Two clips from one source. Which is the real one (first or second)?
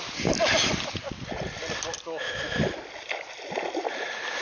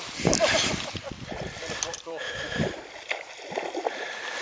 first